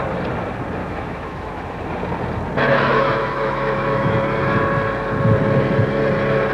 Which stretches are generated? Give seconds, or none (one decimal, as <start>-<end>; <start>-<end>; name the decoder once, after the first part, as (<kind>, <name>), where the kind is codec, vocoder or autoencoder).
0.8-1.8 (autoencoder, DAC-VAE); 2.9-4.1